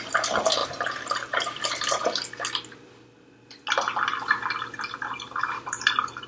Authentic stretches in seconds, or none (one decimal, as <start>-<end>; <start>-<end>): 2.0-5.0